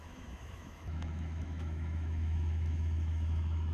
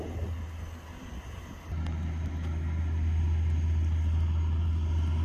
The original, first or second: second